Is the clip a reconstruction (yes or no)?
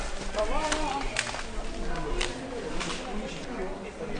no